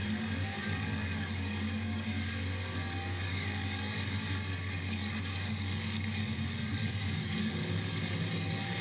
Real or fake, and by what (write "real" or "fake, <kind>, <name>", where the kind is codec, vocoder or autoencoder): fake, codec, DAC